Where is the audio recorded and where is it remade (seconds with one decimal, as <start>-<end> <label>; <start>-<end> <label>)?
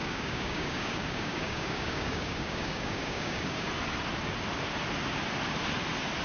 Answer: 0.0-3.7 remade; 3.7-6.2 recorded